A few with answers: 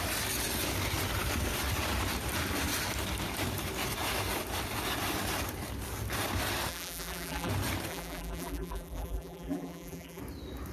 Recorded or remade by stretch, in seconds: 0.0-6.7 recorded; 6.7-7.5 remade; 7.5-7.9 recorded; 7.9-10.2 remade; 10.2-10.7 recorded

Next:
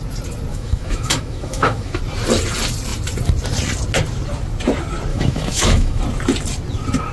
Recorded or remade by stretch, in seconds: 0.0-0.5 recorded; 0.5-2.0 remade; 2.0-5.1 recorded; 5.1-6.0 remade; 6.0-7.1 recorded